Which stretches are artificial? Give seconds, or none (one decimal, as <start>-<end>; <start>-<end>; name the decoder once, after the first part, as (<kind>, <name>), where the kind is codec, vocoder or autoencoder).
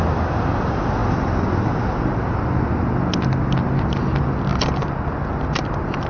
none